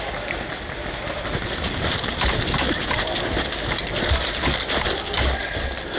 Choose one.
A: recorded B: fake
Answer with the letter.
A